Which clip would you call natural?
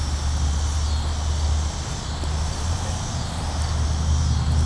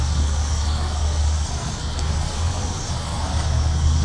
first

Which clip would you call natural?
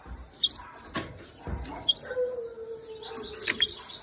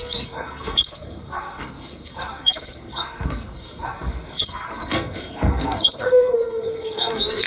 first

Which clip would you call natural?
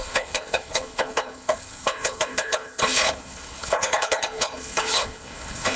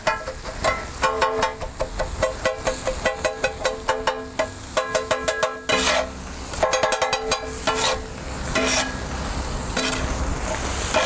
second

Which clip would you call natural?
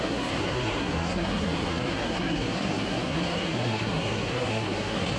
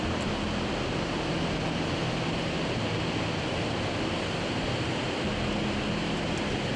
second